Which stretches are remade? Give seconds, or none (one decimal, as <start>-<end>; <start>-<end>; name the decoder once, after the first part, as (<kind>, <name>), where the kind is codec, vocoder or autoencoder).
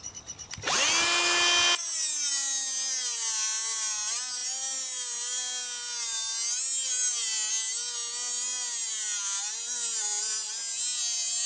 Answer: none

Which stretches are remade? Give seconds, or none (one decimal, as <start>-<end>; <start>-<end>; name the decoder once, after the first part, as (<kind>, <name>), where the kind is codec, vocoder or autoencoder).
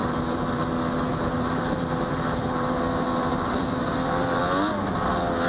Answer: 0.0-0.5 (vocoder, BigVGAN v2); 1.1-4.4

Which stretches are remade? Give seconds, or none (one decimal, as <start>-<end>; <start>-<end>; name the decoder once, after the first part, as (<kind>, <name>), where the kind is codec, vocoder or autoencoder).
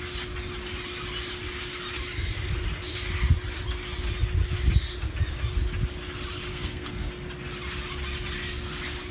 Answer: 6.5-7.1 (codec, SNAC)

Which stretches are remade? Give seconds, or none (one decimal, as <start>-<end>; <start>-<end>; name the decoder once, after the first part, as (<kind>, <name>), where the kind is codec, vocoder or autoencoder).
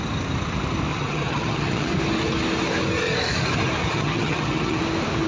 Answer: 0.9-1.9 (vocoder, HiFi-GAN); 3.8-4.8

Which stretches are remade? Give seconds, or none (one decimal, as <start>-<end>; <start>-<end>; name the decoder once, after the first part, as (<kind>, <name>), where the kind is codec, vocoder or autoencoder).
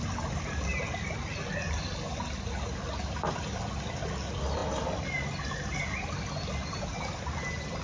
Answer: none